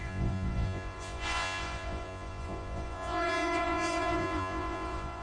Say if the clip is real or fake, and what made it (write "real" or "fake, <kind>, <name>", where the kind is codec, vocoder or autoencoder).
fake, vocoder, Vocos